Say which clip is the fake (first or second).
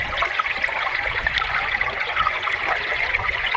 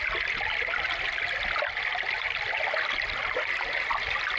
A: first